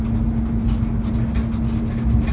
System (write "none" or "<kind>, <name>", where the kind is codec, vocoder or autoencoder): none